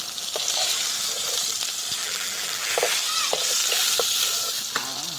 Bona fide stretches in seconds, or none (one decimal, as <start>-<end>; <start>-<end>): 0.0-2.0; 2.7-5.2